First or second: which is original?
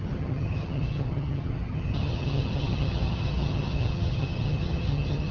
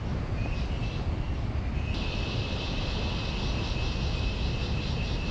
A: second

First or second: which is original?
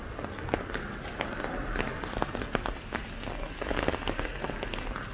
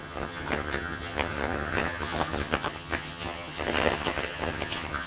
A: first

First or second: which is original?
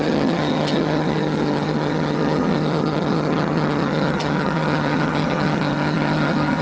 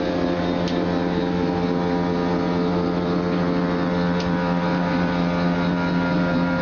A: second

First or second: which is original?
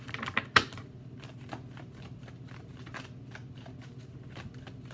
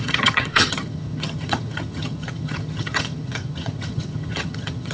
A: first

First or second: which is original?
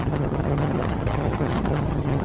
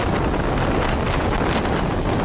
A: second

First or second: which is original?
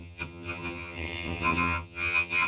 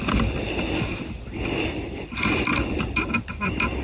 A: second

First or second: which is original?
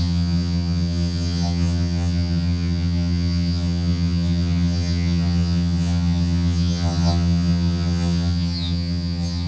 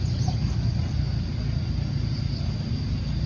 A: second